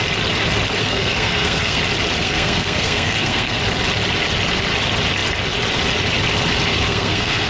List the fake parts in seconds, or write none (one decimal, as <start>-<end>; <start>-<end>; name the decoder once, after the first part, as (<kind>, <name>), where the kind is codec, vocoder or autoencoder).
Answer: 0.8-1.8 (codec, SNAC); 2.2-3.6; 6.7-7.5